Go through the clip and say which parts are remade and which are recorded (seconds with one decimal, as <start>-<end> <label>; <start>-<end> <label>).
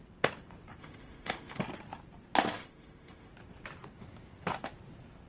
0.0-0.8 recorded; 0.8-1.6 remade; 1.6-2.6 recorded; 2.6-3.3 remade; 3.3-5.3 recorded